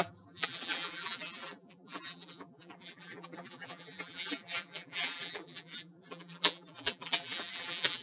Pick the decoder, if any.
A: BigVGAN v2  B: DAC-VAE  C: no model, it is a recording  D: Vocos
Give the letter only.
A